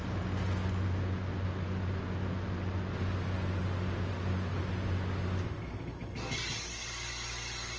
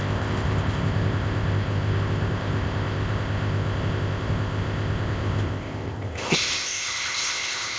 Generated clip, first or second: second